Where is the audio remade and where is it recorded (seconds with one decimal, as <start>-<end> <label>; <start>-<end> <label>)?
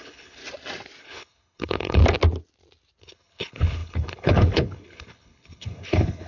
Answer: 0.0-0.4 remade; 0.4-1.0 recorded; 1.0-2.0 remade; 2.0-3.0 recorded; 3.0-6.3 remade